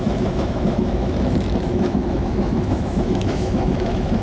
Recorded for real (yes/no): no